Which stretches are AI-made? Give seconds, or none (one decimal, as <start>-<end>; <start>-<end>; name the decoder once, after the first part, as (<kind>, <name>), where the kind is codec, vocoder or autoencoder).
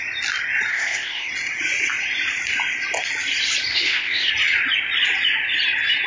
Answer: 0.7-1.3 (codec, ZipCodec); 3.7-4.3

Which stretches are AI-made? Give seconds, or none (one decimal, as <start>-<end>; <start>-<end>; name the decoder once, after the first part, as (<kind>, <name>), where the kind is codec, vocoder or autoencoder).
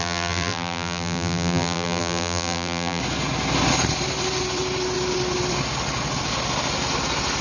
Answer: 0.0-3.0 (vocoder, BigVGAN v2)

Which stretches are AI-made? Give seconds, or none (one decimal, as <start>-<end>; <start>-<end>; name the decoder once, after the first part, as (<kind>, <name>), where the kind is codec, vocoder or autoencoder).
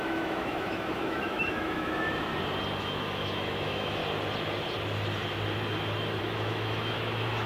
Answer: 0.0-2.3 (autoencoder, DAC-VAE); 2.8-4.0; 6.2-7.5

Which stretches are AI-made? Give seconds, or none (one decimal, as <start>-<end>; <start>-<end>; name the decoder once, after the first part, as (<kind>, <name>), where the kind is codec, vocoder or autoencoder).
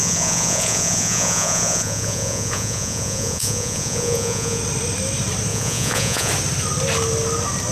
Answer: 0.0-4.6 (vocoder, Vocos); 5.5-6.3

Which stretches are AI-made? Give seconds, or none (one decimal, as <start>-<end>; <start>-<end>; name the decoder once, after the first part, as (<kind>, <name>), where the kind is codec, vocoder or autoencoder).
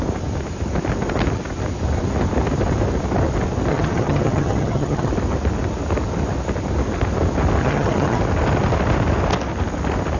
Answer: 3.7-5.1 (vocoder, HiFi-GAN); 7.6-8.2